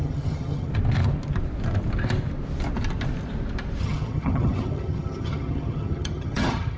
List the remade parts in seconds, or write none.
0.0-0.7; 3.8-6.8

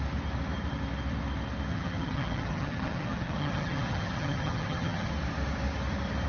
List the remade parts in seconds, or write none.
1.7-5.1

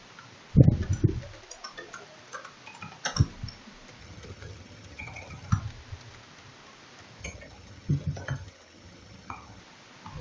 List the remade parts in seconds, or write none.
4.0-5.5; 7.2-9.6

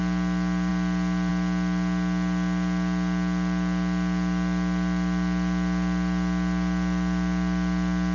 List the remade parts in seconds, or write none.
none